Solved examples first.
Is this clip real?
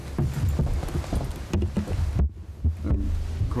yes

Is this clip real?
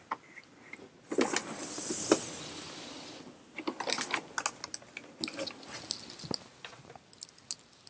yes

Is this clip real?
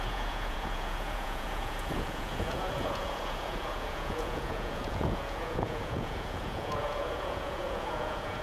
no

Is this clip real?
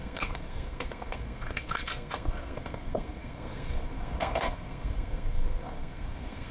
no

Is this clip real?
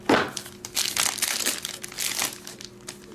yes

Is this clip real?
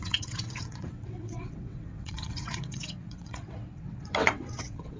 no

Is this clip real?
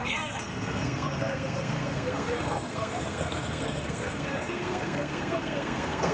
no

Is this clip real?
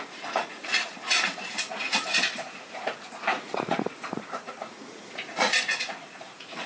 no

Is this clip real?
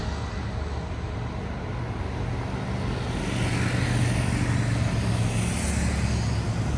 yes